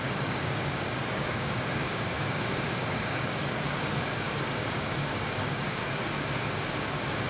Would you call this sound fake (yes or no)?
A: yes